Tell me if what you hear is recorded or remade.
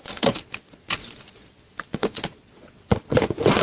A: remade